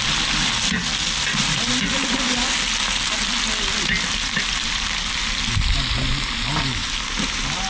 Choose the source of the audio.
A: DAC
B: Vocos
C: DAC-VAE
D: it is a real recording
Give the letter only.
D